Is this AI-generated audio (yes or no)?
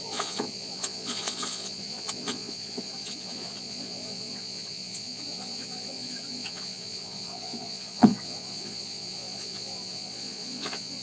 yes